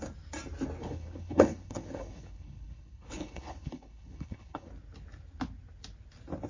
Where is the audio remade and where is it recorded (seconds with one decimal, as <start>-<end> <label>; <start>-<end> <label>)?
0.0-0.8 recorded; 0.8-4.7 remade; 4.7-6.5 recorded